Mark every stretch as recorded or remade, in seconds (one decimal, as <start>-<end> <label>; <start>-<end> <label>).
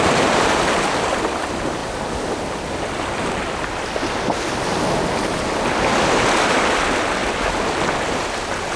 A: 0.0-8.8 recorded